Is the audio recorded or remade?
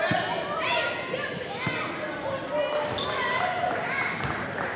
recorded